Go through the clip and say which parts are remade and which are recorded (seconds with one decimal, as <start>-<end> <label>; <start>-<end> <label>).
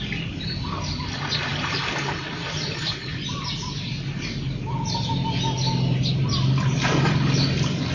0.0-7.9 recorded